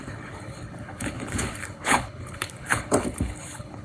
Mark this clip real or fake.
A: fake